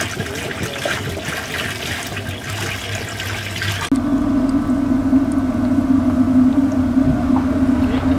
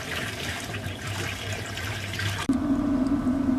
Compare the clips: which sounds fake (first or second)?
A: second